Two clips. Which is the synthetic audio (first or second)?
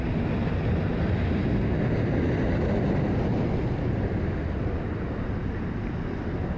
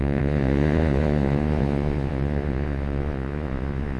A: second